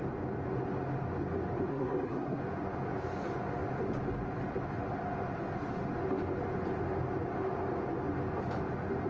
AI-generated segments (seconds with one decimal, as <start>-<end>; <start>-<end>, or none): 1.7-2.4